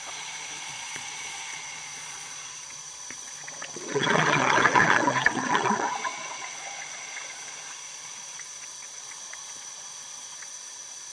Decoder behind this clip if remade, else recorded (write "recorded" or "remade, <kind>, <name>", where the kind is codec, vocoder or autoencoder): remade, vocoder, Vocos